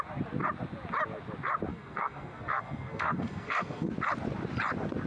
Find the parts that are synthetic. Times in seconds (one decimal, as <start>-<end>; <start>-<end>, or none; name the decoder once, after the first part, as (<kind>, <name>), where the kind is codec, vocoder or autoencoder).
1.7-3.9 (codec, SNAC)